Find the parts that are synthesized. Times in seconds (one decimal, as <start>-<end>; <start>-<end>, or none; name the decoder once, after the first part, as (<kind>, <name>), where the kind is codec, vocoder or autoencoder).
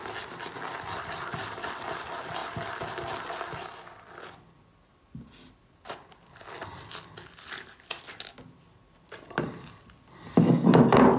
none